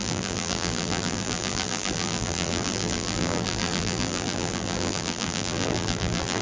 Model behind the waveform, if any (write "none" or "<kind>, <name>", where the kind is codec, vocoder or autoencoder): vocoder, BigVGAN v2